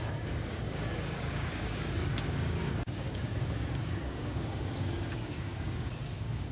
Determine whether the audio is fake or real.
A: fake